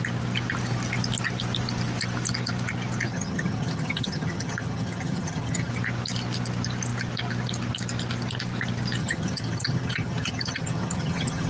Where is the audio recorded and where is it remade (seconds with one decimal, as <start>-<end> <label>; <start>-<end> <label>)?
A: 0.0-3.1 recorded; 3.1-5.7 remade; 5.7-9.0 recorded; 9.0-11.5 remade